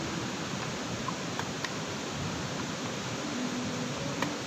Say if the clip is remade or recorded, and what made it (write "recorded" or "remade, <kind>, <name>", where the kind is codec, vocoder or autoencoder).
recorded